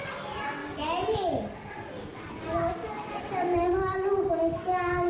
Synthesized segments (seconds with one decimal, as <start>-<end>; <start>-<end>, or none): none